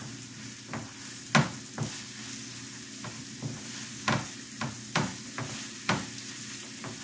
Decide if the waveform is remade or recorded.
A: recorded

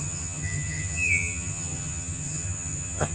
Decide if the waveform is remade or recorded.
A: remade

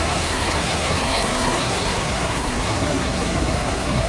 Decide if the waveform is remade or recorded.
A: remade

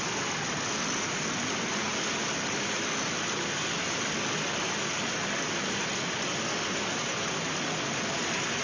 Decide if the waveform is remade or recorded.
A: recorded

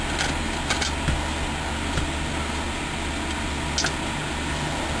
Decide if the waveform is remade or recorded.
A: recorded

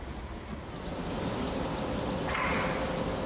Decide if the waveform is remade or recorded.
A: recorded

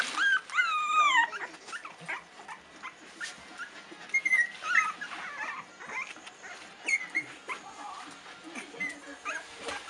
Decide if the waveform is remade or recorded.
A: recorded